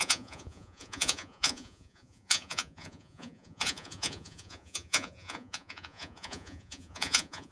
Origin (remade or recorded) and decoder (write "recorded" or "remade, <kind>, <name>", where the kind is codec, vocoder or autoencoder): remade, vocoder, Vocos